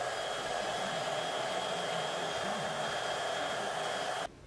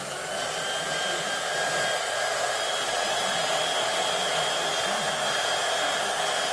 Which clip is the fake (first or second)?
first